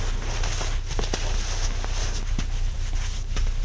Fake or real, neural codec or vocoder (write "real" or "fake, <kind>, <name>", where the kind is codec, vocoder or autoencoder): real